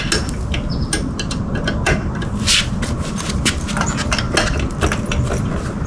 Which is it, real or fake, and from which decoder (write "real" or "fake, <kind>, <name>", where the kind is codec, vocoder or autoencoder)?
real